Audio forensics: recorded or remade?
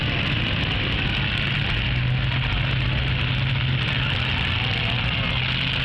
recorded